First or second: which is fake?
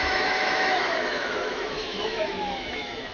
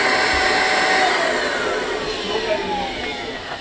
first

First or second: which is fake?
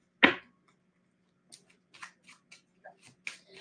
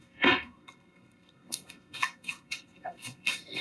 second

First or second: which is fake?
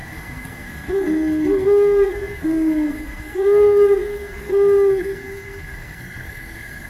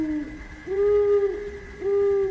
first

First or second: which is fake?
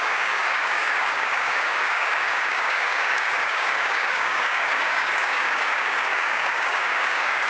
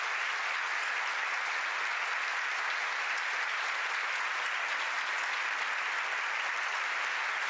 first